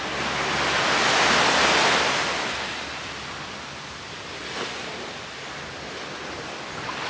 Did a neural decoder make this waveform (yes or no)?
no